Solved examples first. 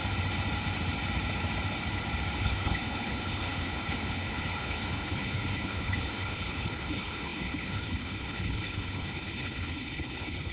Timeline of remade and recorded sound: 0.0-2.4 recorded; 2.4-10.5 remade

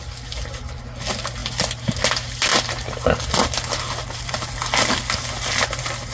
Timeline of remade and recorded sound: 0.0-6.1 recorded

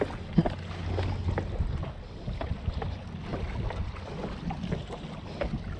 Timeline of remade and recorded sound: 0.0-5.8 recorded

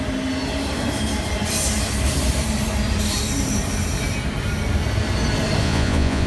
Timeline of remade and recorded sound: 0.0-5.6 recorded; 5.6-6.3 remade

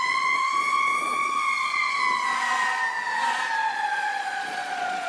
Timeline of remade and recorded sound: 0.0-2.0 remade; 2.0-3.7 recorded; 3.7-5.1 remade

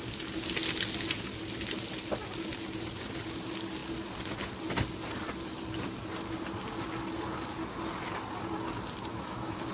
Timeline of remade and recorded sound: 0.0-9.1 recorded; 9.1-9.7 remade